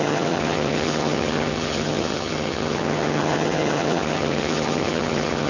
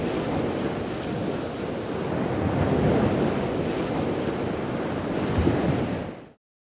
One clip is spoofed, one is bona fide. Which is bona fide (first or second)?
second